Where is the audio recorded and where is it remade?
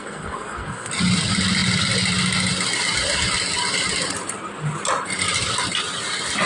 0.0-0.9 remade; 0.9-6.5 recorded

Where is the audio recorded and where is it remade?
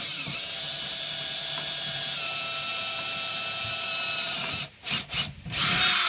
0.0-6.1 remade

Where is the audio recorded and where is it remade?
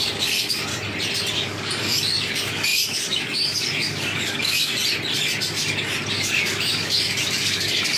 0.0-0.7 remade; 0.7-1.3 recorded; 1.3-4.7 remade; 4.7-6.1 recorded; 6.1-8.0 remade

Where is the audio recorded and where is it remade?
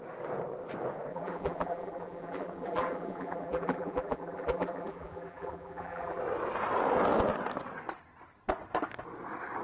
0.0-1.1 recorded; 1.1-6.2 remade; 6.2-9.6 recorded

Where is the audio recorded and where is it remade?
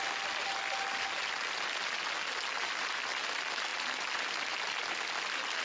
0.0-5.6 recorded